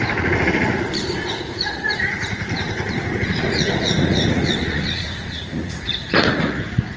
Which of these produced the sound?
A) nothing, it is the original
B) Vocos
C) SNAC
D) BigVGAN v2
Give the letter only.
B